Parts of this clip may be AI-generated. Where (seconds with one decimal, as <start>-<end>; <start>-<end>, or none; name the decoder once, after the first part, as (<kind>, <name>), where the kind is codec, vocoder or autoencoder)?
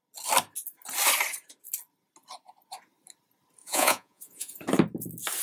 3.6-4.6 (vocoder, Vocos)